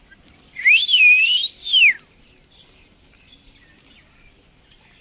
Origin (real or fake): real